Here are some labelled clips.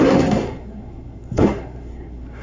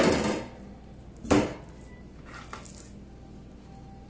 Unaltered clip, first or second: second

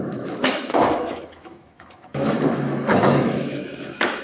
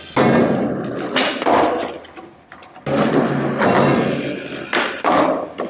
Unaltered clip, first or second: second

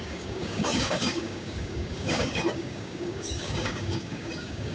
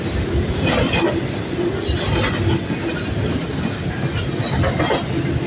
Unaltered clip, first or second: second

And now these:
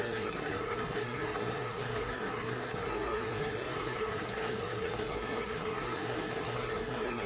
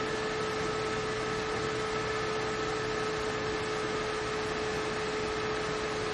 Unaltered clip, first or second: second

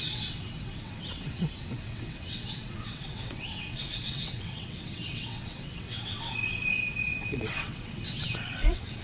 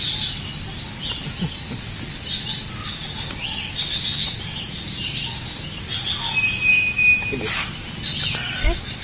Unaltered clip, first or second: second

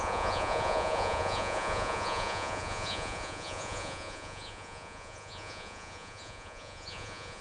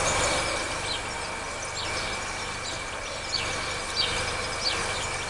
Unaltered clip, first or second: second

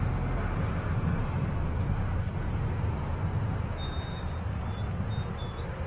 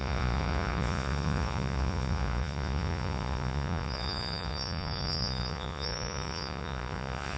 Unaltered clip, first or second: first